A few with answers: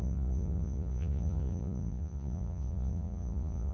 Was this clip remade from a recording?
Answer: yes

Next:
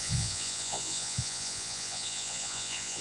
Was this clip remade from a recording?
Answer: yes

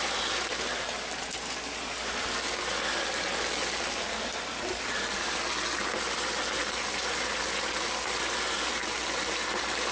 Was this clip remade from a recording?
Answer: no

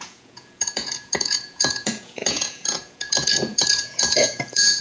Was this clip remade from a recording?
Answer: yes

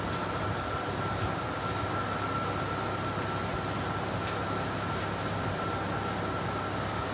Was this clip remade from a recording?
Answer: no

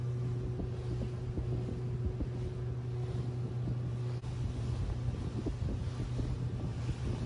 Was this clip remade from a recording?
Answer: no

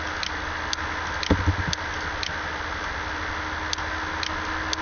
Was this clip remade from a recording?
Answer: no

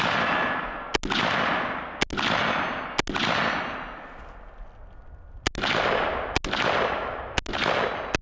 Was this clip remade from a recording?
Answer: no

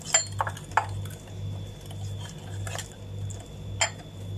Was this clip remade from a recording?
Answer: no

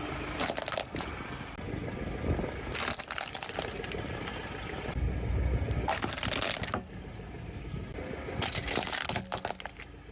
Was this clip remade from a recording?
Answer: no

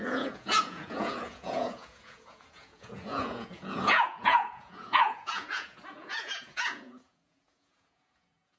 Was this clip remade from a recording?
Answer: yes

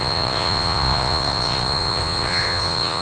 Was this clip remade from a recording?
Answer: yes